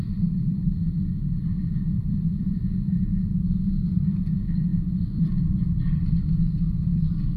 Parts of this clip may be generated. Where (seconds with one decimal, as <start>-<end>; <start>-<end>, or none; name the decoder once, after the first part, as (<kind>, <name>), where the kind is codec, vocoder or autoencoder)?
0.0-0.6 (vocoder, BigVGAN v2); 1.2-2.6; 3.5-7.4